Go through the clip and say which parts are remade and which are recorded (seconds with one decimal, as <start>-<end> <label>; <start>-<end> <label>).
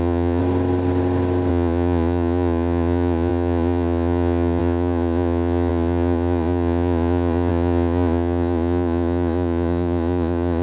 0.0-0.4 remade; 0.4-1.5 recorded; 1.5-10.6 remade